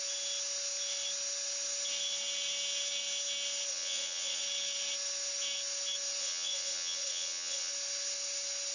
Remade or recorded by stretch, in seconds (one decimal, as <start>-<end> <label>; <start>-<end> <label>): 0.0-3.7 recorded; 3.7-4.4 remade; 4.4-6.2 recorded; 6.2-7.7 remade; 7.7-8.7 recorded